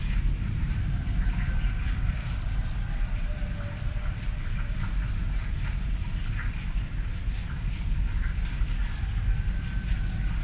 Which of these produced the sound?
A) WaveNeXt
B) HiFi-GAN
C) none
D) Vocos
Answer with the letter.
C